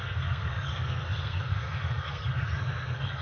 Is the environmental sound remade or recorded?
remade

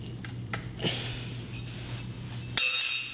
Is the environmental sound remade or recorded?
recorded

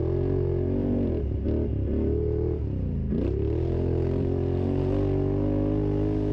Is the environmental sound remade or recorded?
recorded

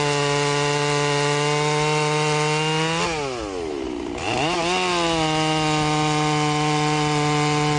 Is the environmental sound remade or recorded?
recorded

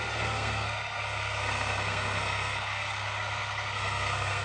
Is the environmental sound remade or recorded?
remade